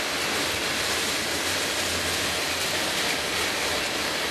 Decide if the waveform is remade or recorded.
remade